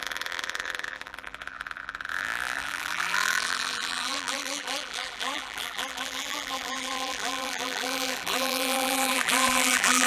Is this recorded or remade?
remade